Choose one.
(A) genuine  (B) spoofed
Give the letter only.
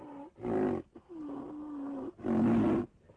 A